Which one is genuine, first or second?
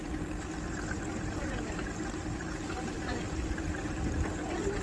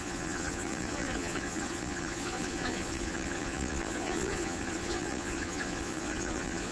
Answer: first